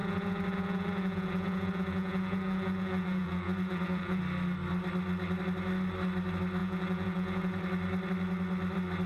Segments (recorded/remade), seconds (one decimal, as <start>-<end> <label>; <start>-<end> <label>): 0.0-4.2 remade; 4.2-6.6 recorded; 6.6-7.6 remade; 7.6-9.1 recorded